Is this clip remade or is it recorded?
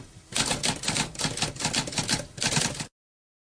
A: recorded